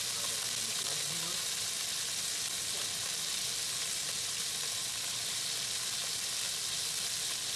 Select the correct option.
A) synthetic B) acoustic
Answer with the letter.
B